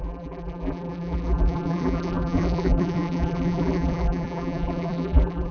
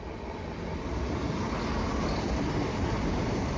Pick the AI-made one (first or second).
first